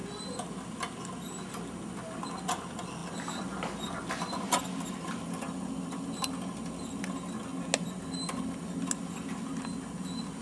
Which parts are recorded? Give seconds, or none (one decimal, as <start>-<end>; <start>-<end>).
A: 0.0-10.4